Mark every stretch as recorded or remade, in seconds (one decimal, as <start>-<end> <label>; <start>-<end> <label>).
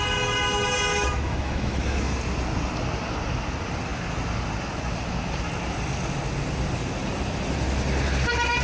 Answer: 0.0-0.9 recorded; 0.9-2.2 remade; 2.2-8.6 recorded